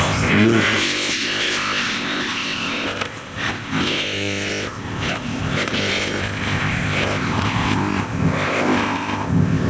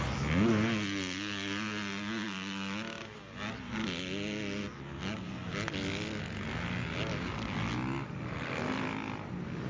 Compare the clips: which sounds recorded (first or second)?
second